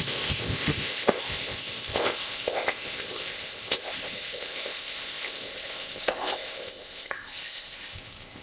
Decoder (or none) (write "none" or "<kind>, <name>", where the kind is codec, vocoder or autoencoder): codec, ZipCodec